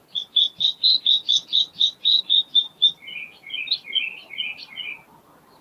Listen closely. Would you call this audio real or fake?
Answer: real